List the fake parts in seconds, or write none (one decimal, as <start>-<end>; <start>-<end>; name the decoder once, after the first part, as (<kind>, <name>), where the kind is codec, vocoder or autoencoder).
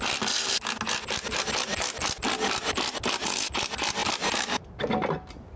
none